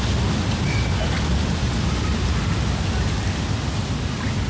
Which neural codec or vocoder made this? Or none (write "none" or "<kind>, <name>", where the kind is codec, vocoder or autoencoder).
none